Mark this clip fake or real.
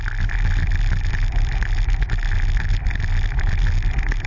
real